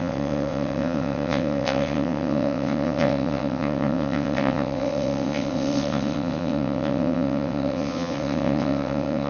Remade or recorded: remade